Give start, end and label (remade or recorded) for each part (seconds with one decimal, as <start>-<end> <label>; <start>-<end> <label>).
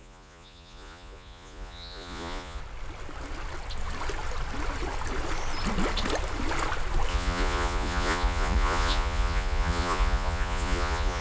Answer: 0.0-2.6 remade; 2.6-7.1 recorded; 7.1-11.2 remade